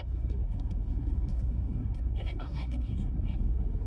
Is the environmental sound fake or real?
fake